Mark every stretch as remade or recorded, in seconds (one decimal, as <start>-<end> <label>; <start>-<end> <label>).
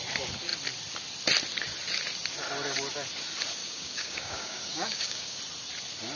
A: 0.0-3.6 recorded; 3.6-5.4 remade; 5.4-6.2 recorded